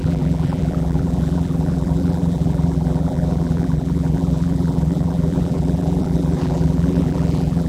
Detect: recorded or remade remade